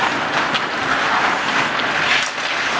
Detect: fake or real real